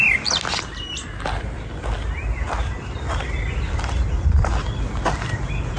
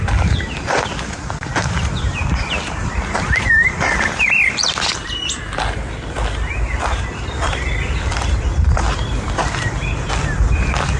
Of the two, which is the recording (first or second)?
first